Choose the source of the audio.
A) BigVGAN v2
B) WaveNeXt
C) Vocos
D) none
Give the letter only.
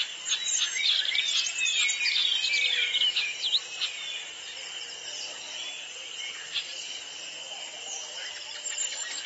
D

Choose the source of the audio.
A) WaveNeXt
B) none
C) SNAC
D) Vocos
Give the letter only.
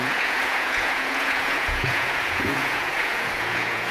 D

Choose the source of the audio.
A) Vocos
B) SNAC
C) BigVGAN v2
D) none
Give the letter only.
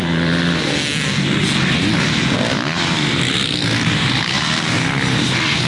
D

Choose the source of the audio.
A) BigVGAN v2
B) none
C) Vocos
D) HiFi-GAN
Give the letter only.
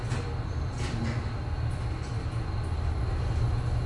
B